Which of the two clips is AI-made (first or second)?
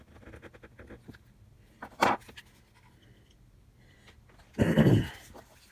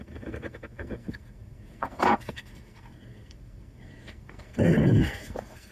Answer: second